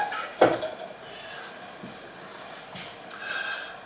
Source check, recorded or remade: recorded